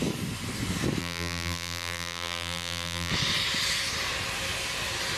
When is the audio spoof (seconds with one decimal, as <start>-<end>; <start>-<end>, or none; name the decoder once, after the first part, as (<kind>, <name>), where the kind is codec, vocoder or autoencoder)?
1.0-3.1 (vocoder, BigVGAN v2)